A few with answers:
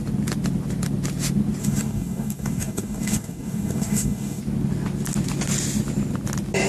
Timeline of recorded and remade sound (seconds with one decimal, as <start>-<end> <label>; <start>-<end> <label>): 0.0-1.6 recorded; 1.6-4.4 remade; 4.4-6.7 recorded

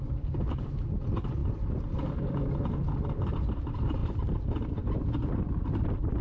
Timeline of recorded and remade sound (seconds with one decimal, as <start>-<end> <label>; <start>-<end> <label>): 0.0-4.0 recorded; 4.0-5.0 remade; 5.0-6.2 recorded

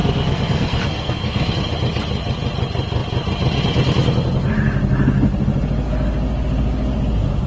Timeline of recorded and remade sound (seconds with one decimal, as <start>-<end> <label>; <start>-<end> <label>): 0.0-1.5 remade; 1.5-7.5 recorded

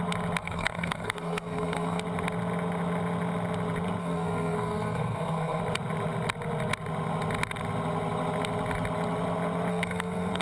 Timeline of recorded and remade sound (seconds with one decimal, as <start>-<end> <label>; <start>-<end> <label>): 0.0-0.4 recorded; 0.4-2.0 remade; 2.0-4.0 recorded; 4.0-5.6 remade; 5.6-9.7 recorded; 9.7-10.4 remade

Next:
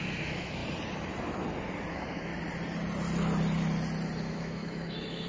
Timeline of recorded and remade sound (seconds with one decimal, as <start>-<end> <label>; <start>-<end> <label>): 0.0-0.6 remade; 0.6-1.9 recorded; 1.9-2.3 remade; 2.3-4.3 recorded; 4.3-5.3 remade